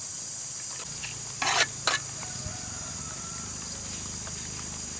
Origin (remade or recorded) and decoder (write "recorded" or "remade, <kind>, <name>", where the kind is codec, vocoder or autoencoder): recorded